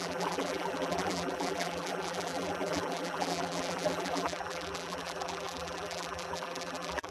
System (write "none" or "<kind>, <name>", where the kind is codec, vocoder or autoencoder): vocoder, BigVGAN v2